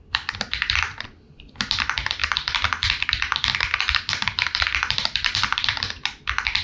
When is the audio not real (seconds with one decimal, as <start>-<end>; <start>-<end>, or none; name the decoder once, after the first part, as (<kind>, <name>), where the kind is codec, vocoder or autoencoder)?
none